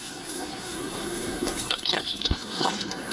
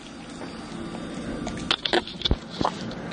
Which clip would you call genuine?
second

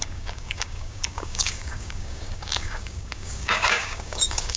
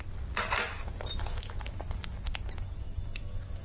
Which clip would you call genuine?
second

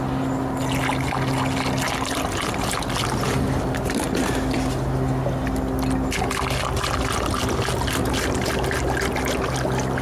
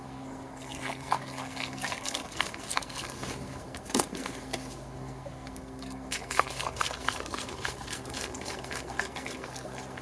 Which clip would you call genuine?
first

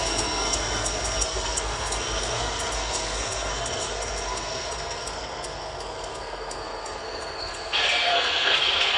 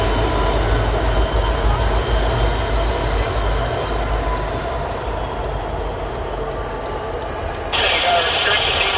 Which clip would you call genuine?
second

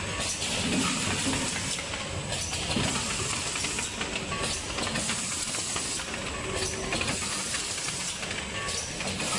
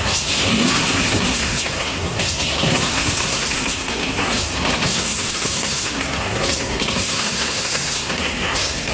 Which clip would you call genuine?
first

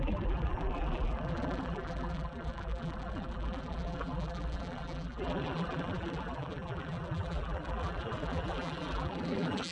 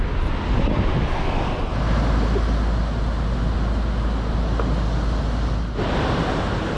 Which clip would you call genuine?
second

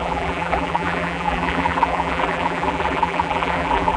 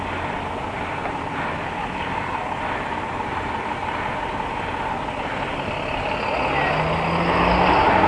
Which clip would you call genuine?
second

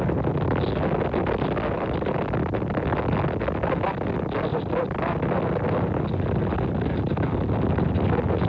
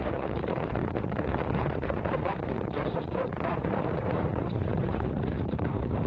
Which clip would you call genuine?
first